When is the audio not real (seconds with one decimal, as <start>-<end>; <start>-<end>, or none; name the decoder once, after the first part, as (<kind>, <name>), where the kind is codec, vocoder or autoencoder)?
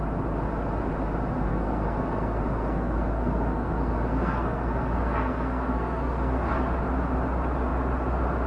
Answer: 1.5-6.5 (codec, SNAC)